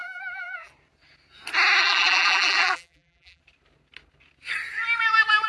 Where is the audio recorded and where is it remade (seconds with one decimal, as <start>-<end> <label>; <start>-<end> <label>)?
0.0-0.7 remade; 0.7-1.8 recorded; 1.8-3.4 remade; 3.4-5.5 recorded